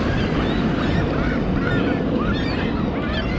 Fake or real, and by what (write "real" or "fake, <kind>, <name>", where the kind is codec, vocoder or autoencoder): real